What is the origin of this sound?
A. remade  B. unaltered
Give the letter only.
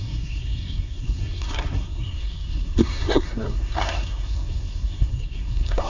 A